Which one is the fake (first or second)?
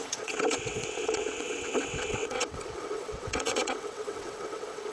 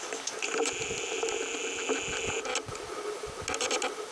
first